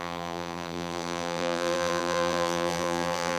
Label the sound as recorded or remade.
remade